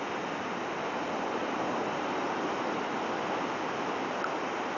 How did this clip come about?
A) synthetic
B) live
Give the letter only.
B